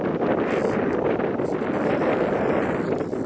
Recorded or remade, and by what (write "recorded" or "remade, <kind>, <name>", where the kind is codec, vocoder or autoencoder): recorded